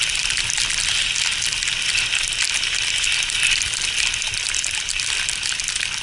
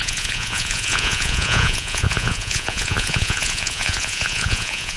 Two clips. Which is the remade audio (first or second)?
second